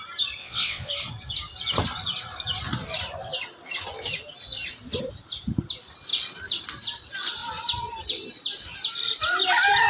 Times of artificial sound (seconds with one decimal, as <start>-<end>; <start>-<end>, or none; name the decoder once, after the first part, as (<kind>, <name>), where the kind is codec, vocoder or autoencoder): 0.4-0.9 (vocoder, WaveNeXt)